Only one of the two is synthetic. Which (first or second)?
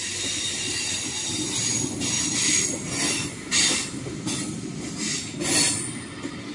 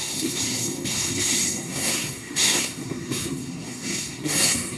second